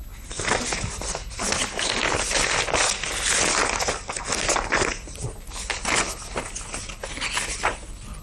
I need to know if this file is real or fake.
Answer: real